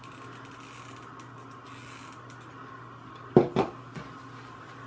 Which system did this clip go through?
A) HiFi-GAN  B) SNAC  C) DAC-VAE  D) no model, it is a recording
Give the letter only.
D